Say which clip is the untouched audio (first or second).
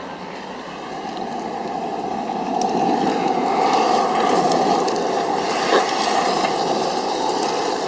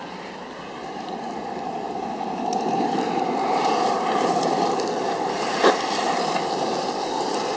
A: first